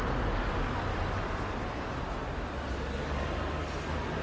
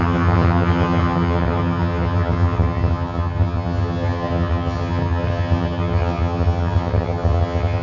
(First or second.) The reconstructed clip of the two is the second